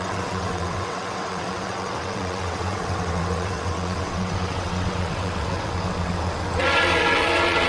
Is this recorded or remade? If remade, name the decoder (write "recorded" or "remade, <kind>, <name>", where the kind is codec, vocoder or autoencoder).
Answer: remade, vocoder, WaveNeXt